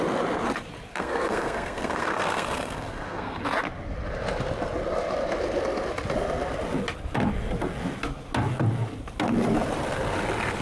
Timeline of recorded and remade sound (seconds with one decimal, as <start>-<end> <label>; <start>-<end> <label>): 0.0-0.9 recorded; 0.9-3.4 remade; 3.4-10.6 recorded